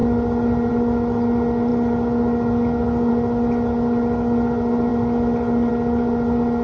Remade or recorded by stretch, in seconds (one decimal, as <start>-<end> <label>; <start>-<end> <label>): 0.0-6.6 recorded